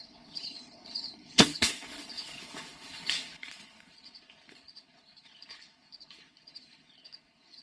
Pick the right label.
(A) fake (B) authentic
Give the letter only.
A